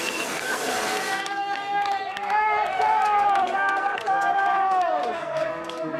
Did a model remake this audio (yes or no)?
yes